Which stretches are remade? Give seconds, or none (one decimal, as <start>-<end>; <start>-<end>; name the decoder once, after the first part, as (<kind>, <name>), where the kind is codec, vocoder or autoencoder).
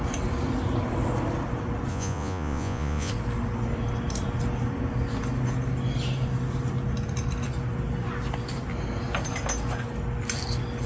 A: 1.9-3.1 (vocoder, Vocos)